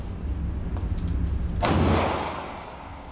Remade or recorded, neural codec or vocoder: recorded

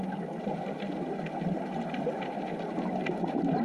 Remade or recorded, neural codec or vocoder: recorded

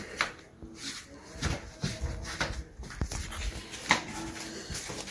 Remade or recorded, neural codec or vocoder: recorded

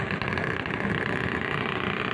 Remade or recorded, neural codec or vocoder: recorded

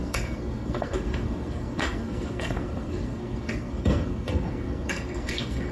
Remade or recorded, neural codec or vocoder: remade, codec, SNAC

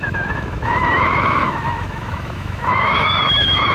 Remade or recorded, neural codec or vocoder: remade, autoencoder, DAC-VAE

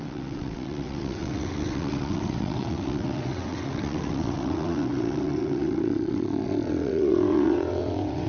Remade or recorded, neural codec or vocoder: remade, vocoder, WaveNeXt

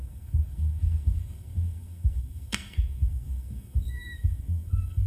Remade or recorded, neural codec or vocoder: remade, codec, SNAC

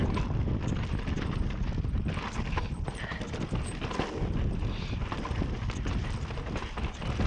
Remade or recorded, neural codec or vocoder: recorded